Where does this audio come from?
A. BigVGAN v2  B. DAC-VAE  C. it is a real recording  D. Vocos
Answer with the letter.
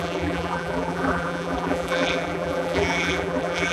A